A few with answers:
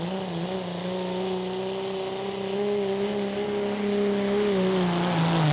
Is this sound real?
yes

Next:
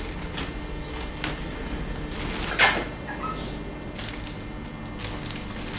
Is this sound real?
yes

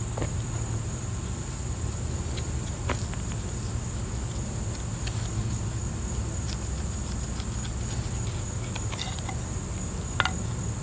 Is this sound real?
yes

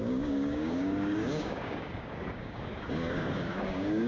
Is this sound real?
no